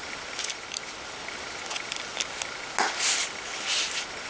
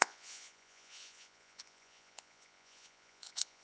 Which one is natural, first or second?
first